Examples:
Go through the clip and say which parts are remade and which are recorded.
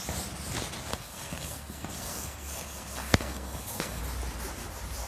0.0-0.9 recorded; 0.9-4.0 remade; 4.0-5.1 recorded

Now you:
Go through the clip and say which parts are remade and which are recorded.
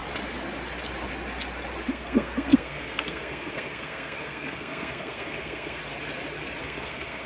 0.0-1.9 recorded; 1.9-5.8 remade; 5.8-6.6 recorded; 6.6-7.3 remade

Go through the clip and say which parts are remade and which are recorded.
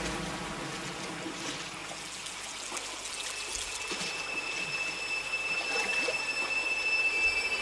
0.0-7.6 recorded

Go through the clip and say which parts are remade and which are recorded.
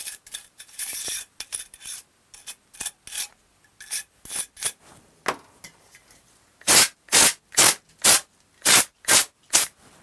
0.0-1.3 remade; 1.3-10.0 recorded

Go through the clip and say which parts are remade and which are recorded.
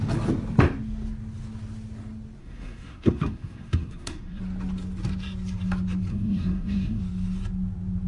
0.0-2.4 recorded; 2.4-4.4 remade; 4.4-6.1 recorded; 6.1-7.0 remade; 7.0-8.1 recorded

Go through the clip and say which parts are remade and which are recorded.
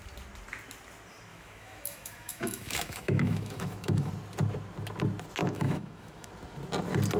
0.0-1.3 recorded; 1.3-4.1 remade; 4.1-5.4 recorded; 5.4-6.3 remade; 6.3-7.2 recorded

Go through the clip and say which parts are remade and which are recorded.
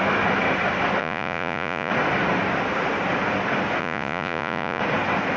0.0-1.0 recorded; 1.0-1.9 remade; 1.9-3.8 recorded; 3.8-4.8 remade; 4.8-5.4 recorded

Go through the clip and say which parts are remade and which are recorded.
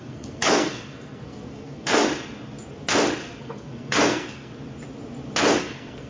0.0-2.1 remade; 2.1-3.4 recorded; 3.4-4.5 remade; 4.5-5.6 recorded; 5.6-6.1 remade